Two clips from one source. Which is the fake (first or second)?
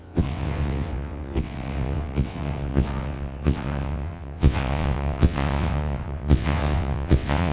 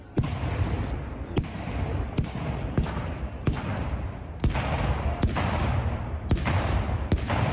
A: first